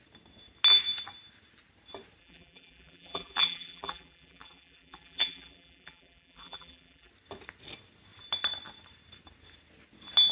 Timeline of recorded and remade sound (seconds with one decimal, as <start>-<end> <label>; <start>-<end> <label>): 0.0-2.2 recorded; 2.2-7.1 remade; 7.1-10.3 recorded